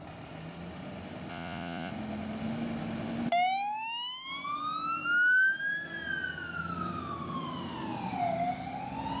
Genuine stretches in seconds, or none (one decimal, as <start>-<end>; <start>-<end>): 0.0-1.3; 1.9-9.2